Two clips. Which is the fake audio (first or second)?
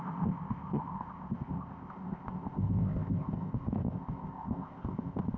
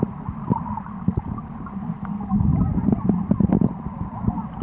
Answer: first